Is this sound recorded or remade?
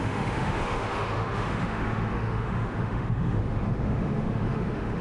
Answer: remade